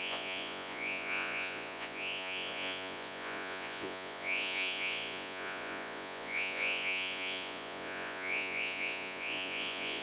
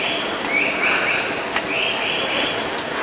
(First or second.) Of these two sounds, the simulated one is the first